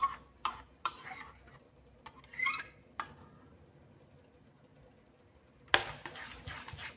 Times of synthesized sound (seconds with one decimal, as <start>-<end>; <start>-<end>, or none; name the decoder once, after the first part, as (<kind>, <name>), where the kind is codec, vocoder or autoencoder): 0.0-2.3 (vocoder, BigVGAN v2); 6.5-7.0